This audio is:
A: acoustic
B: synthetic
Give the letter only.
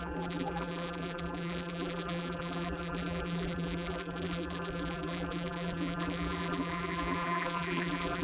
B